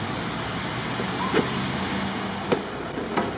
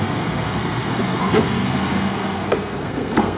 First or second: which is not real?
second